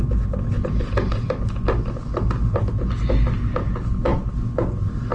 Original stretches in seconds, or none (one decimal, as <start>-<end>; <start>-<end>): 0.0-5.1